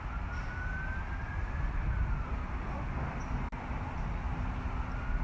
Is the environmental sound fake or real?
real